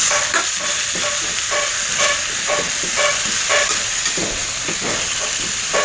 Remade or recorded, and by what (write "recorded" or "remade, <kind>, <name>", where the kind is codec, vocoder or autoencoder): recorded